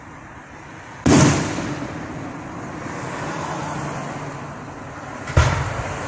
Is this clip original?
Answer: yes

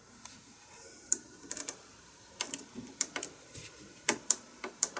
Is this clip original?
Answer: no